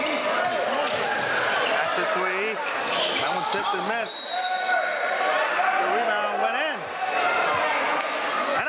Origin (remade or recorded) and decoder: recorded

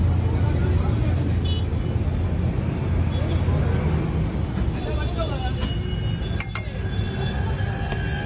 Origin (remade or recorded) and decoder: recorded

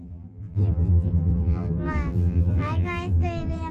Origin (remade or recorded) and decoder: remade, vocoder, BigVGAN v2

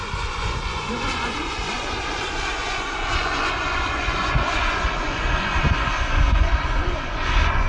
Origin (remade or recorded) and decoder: remade, vocoder, Vocos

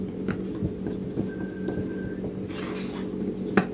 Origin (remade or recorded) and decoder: recorded